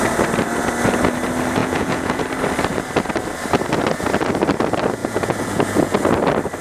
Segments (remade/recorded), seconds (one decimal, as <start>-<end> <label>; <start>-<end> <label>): 0.0-1.6 recorded; 1.6-2.2 remade; 2.2-5.0 recorded; 5.0-6.0 remade; 6.0-6.6 recorded